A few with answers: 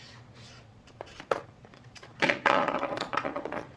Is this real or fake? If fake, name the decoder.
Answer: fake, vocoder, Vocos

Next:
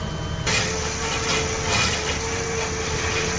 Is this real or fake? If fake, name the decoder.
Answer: real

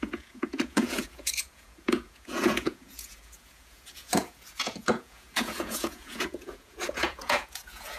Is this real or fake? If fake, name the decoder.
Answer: fake, vocoder, Vocos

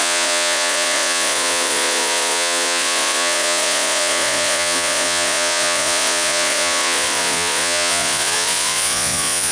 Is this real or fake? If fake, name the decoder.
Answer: fake, vocoder, Vocos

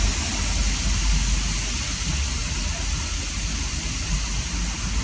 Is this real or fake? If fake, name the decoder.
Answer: real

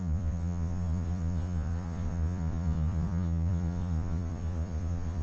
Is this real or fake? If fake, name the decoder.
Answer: fake, vocoder, Vocos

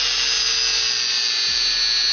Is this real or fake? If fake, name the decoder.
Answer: real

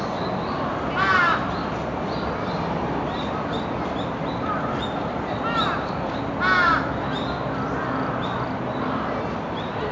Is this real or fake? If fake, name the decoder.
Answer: real